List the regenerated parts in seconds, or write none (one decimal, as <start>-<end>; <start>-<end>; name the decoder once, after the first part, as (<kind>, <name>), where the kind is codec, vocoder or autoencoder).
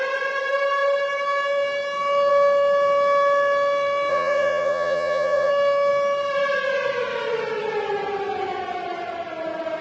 4.1-5.5 (vocoder, Vocos)